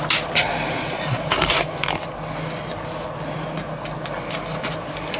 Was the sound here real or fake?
real